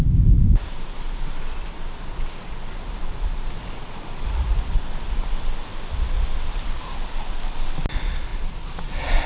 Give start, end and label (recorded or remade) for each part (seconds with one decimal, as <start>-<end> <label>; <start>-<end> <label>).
0.0-9.3 recorded